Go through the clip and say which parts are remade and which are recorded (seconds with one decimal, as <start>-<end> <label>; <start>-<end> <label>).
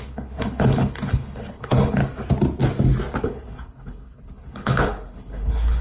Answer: 0.0-2.0 remade; 2.0-3.2 recorded; 3.2-5.8 remade